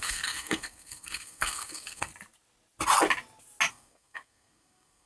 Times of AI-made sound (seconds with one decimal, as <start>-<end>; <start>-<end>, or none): 0.0-2.1; 3.7-5.1